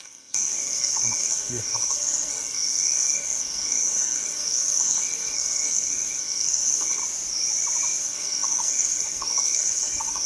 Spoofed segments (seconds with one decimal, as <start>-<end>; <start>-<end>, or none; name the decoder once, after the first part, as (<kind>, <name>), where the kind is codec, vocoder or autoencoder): 0.0-7.0 (codec, SNAC); 8.0-10.3